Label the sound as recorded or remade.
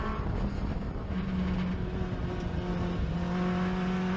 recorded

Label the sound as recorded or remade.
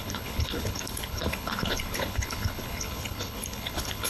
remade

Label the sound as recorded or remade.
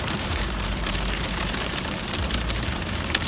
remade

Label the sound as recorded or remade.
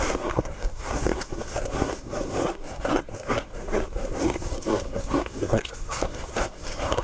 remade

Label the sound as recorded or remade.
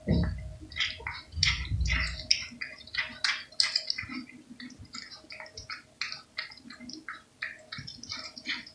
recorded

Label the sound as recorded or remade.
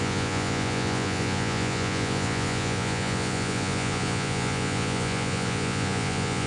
remade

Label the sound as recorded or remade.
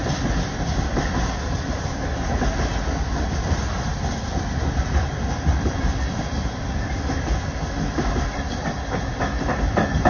recorded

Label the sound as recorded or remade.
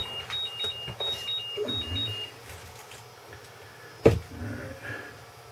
recorded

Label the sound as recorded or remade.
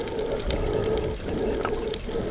recorded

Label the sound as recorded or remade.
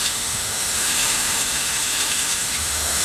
remade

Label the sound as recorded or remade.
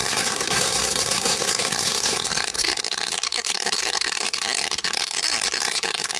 remade